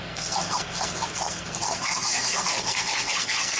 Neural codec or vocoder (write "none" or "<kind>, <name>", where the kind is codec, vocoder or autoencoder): codec, SNAC